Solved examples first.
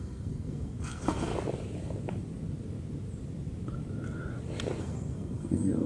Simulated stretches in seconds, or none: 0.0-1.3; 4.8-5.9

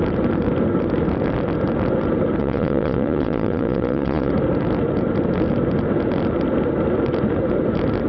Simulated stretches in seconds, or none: 2.4-4.3

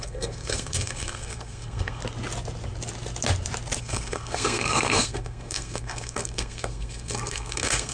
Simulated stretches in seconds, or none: 0.0-2.0; 3.8-7.9

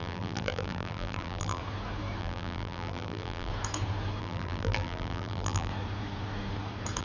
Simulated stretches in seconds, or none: 0.0-1.6; 2.2-3.5; 4.2-5.7